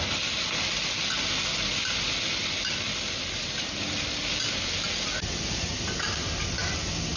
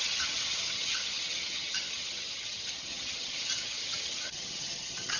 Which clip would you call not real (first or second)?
second